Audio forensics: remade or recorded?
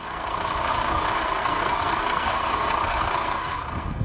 remade